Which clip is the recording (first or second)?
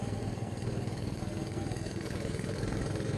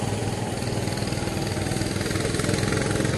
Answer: second